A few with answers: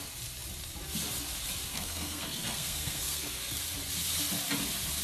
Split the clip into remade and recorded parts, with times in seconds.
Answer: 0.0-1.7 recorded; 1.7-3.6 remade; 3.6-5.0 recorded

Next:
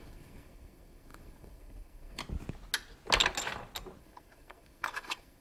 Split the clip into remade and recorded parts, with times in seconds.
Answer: 0.0-2.2 remade; 2.2-4.0 recorded; 4.0-5.4 remade

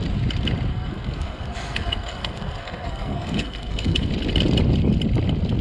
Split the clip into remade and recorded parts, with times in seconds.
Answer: 0.0-0.7 recorded; 0.7-4.1 remade; 4.1-5.6 recorded

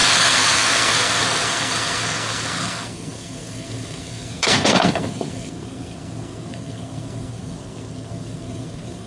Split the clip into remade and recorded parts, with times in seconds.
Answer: 0.0-9.1 remade